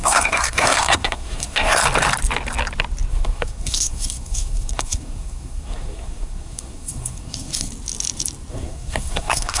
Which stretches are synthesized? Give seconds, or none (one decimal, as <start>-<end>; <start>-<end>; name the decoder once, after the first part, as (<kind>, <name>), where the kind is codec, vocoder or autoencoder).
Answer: 0.0-1.8 (codec, SNAC); 3.1-7.7; 8.5-9.6